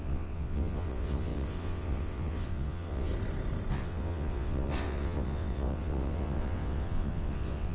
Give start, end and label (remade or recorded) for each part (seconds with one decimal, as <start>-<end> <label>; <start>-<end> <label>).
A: 0.0-3.1 remade; 3.1-3.7 recorded; 3.7-7.7 remade